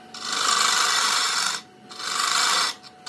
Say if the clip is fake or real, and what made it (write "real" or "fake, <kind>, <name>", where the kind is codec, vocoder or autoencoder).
real